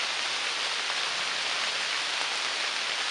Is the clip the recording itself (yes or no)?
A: yes